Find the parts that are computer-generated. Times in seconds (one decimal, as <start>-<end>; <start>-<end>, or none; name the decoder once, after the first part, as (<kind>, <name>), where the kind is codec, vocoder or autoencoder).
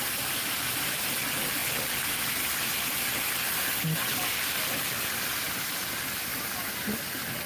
none